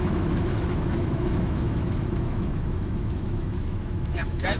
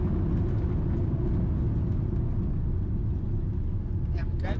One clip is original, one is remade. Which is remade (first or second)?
first